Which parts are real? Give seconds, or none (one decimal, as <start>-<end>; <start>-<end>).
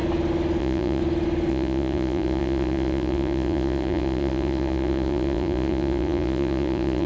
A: 0.0-0.6; 1.0-1.5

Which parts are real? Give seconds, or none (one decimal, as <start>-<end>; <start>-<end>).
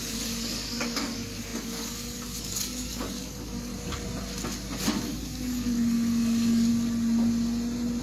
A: 3.7-5.0; 6.7-8.0